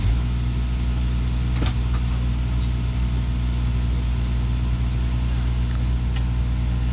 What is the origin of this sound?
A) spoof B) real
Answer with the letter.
B